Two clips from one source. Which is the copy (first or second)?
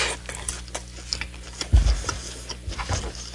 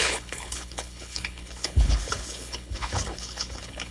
second